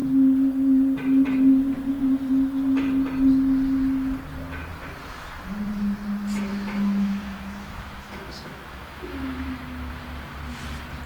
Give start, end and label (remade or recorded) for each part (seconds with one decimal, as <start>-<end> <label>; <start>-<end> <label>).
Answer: 0.0-6.5 recorded; 6.5-9.9 remade; 9.9-11.1 recorded